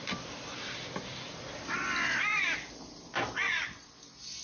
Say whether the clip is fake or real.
real